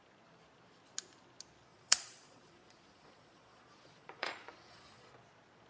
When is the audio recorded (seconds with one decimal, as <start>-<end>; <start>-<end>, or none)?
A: 0.0-1.7; 5.1-5.7